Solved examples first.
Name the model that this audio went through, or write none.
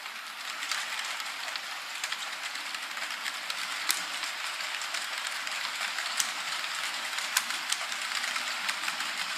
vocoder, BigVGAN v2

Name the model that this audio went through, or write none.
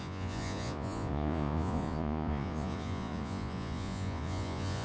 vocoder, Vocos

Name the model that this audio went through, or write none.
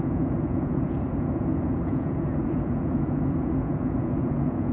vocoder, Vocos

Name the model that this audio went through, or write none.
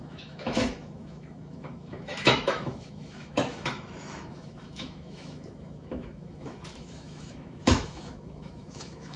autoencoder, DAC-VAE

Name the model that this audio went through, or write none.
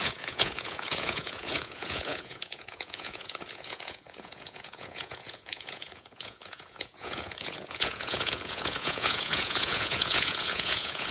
vocoder, Vocos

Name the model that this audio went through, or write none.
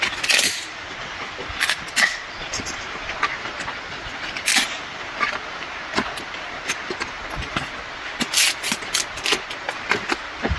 none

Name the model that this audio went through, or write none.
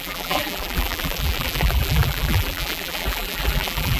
vocoder, BigVGAN v2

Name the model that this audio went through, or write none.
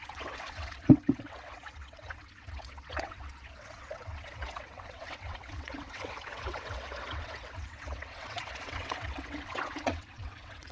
vocoder, WaveNeXt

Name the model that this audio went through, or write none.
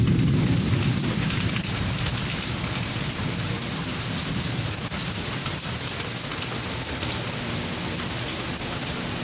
none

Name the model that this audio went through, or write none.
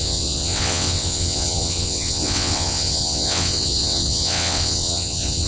vocoder, WaveNeXt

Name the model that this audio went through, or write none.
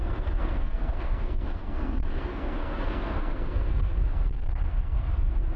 codec, SNAC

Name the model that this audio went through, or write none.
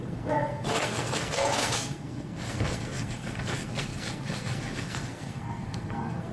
codec, SNAC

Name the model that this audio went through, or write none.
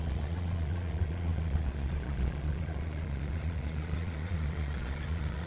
vocoder, Vocos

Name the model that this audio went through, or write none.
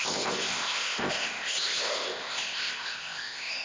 codec, ZipCodec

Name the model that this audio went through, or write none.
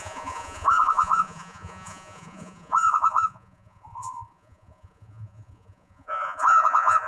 vocoder, Vocos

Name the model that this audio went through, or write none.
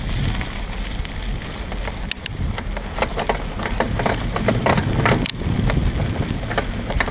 none